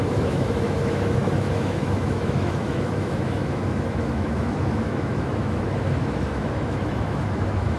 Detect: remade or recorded remade